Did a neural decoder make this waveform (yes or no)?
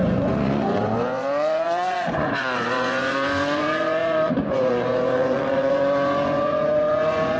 yes